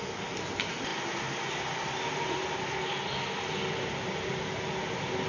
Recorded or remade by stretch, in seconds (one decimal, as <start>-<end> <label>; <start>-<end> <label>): 0.0-5.3 recorded